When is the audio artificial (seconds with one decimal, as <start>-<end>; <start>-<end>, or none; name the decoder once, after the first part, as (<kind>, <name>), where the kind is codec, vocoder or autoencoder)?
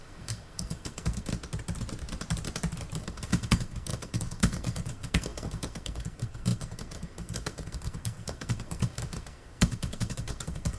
0.0-1.3 (codec, SNAC); 3.0-10.8